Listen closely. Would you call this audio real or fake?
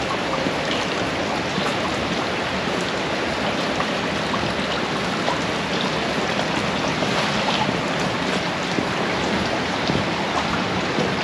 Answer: real